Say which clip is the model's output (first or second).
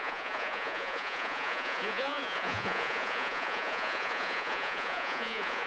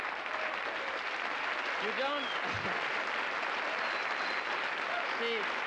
first